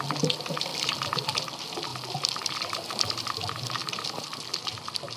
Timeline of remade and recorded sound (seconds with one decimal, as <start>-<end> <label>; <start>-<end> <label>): 0.0-5.2 recorded